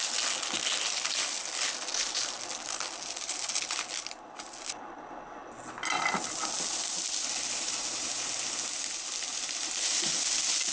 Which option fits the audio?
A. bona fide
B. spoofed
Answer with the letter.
A